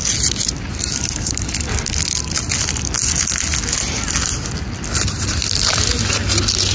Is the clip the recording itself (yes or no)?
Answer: yes